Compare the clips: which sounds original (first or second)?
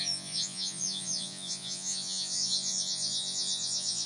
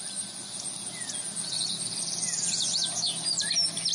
second